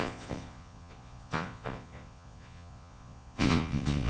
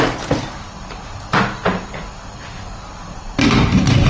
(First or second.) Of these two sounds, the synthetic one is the first